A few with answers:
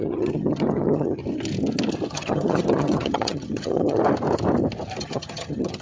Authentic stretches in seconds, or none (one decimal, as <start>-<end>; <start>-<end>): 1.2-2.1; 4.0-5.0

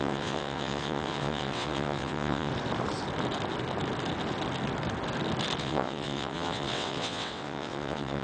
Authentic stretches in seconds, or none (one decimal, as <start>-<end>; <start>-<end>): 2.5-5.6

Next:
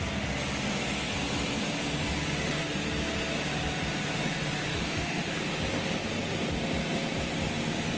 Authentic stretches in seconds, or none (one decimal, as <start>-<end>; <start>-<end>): 0.0-4.7; 5.3-8.0

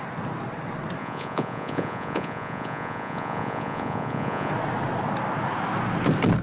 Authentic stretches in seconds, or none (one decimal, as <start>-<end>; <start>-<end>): 0.0-1.0; 4.5-6.4